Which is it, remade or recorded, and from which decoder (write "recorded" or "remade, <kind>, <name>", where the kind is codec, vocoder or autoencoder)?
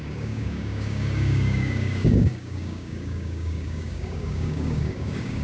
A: remade, codec, DAC